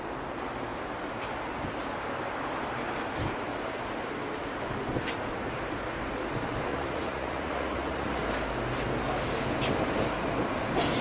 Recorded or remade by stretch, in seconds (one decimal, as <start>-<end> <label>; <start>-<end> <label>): 0.0-6.7 recorded; 6.7-8.2 remade; 8.2-11.0 recorded